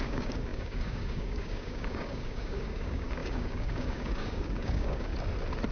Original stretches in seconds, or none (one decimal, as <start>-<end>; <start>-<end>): 5.1-5.7